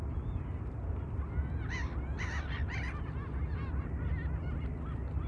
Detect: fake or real real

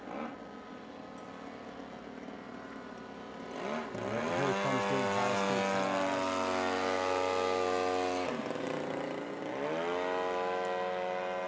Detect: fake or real real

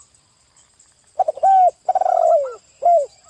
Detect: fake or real real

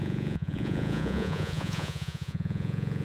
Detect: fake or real fake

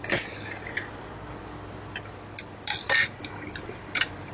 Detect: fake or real real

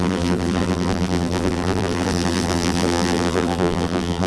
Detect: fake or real fake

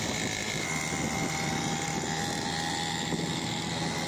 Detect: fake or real real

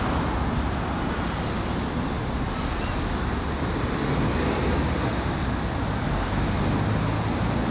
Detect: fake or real real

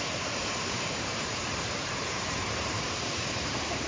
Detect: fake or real fake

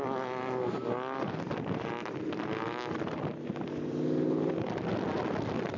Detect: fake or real real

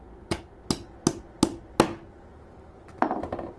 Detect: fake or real real